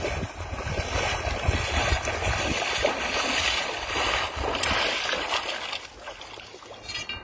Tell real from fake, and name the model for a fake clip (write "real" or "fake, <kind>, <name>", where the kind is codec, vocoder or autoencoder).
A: real